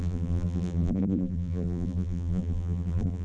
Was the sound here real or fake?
fake